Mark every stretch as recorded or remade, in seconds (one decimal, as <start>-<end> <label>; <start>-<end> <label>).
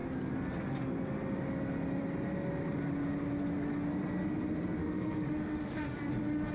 0.0-4.8 recorded; 4.8-5.7 remade; 5.7-6.5 recorded